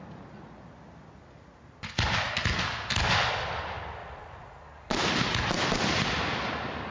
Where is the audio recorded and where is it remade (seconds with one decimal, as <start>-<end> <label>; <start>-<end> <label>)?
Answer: 0.0-4.0 recorded; 4.0-4.6 remade; 4.6-6.9 recorded